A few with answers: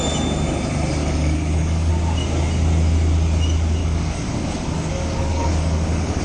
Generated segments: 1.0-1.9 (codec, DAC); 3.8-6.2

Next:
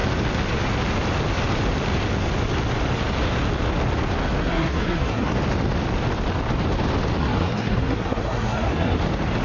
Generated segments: 4.4-5.3 (codec, SNAC); 7.2-9.0

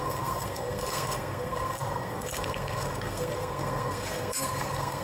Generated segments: 0.0-5.0 (codec, SNAC)

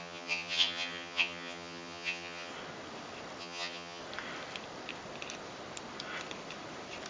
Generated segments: 0.0-2.5 (vocoder, HiFi-GAN); 3.4-4.0

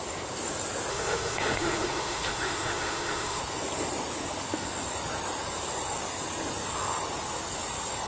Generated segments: 0.9-3.4 (autoencoder, DAC-VAE)

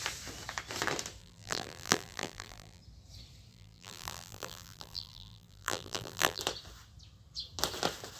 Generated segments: 1.2-2.8 (vocoder, BigVGAN v2); 3.5-6.4

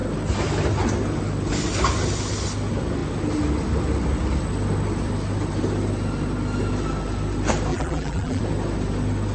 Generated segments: 7.7-8.4 (vocoder, BigVGAN v2)